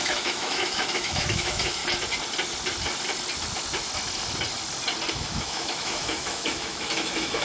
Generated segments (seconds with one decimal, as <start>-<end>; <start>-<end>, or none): 0.0-1.8; 5.1-7.4